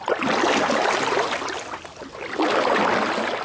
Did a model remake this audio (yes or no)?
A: no